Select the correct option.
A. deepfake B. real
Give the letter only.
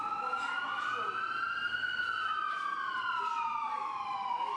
B